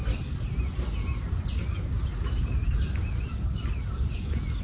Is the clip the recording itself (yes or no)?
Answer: yes